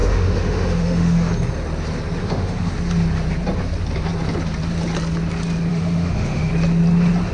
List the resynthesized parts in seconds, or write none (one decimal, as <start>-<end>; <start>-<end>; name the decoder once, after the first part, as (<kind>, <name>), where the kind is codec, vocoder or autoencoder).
0.0-1.3 (autoencoder, DAC-VAE); 2.2-2.7; 5.7-6.5